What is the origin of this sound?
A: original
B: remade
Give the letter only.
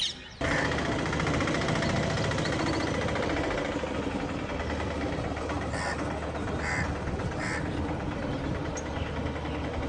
A